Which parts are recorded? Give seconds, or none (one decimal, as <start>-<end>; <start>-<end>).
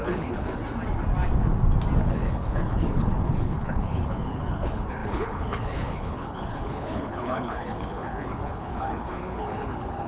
0.6-2.0